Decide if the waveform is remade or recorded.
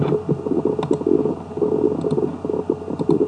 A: recorded